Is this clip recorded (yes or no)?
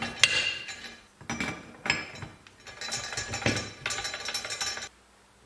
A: yes